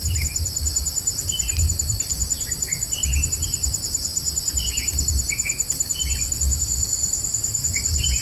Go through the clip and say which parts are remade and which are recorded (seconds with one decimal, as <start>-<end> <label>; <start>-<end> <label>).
0.0-2.1 remade; 2.1-3.3 recorded; 3.3-4.1 remade; 4.1-8.2 recorded